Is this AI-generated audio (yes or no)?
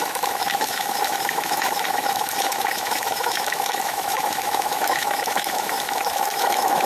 yes